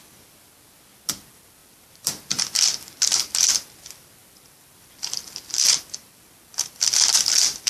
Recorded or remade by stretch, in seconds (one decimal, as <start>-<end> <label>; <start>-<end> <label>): 0.0-1.6 recorded; 1.6-2.3 remade; 2.3-4.2 recorded; 4.2-6.9 remade; 6.9-7.7 recorded